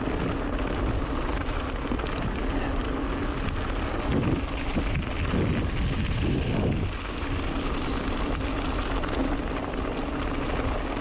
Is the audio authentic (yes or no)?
yes